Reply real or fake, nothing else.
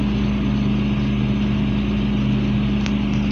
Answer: real